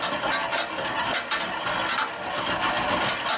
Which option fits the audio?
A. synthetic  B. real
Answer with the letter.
B